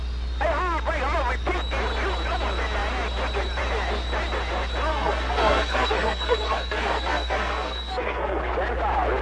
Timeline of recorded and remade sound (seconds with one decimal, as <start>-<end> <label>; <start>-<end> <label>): 0.0-4.9 recorded; 4.9-8.4 remade; 8.4-9.2 recorded